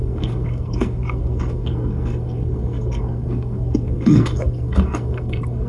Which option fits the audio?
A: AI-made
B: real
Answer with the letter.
A